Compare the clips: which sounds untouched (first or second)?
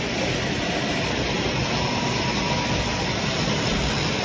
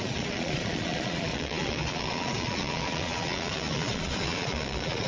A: first